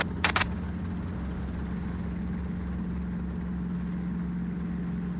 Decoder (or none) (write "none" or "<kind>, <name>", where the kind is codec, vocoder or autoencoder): none